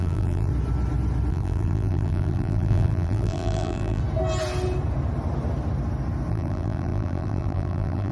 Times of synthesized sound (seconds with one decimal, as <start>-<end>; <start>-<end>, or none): 0.0-0.5; 1.3-4.0; 6.3-8.1